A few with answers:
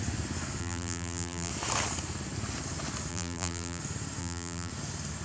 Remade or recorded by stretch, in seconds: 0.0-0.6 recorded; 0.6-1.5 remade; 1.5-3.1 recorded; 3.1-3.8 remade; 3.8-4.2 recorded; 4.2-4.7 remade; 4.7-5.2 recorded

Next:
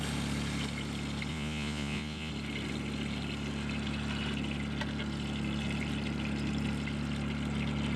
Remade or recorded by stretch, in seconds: 0.0-1.3 recorded; 1.3-2.3 remade; 2.3-8.0 recorded

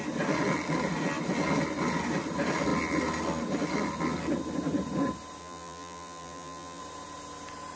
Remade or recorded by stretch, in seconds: 0.0-5.4 recorded; 5.4-6.8 remade; 6.8-7.8 recorded

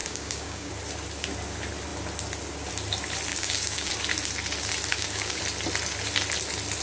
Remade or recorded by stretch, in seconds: 0.0-0.7 remade; 0.7-3.3 recorded; 3.3-3.9 remade; 3.9-4.9 recorded; 4.9-5.4 remade; 5.4-6.8 recorded

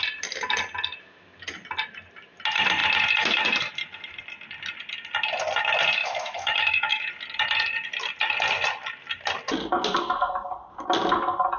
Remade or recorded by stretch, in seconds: 0.0-6.0 recorded; 6.0-7.1 remade; 7.1-11.6 recorded

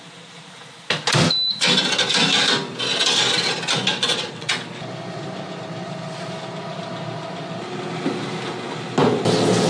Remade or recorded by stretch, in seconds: 0.0-4.0 recorded; 4.0-4.5 remade; 4.5-9.7 recorded